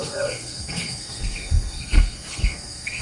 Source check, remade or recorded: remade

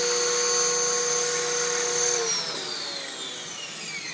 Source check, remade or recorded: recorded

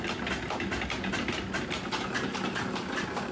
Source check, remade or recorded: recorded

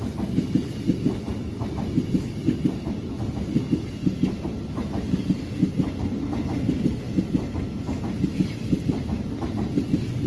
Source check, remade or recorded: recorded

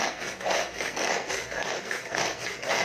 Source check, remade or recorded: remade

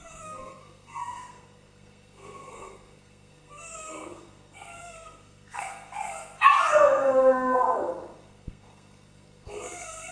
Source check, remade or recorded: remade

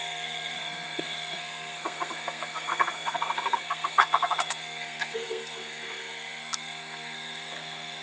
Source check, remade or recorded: remade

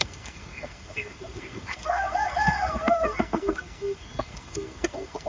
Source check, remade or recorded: remade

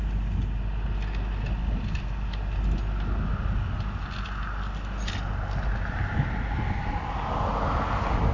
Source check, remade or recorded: recorded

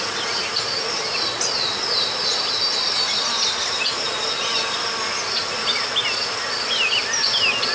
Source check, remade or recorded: recorded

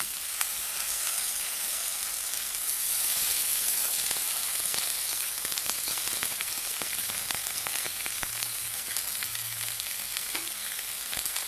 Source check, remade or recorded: remade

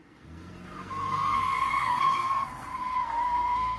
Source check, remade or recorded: remade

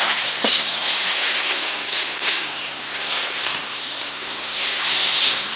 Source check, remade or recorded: remade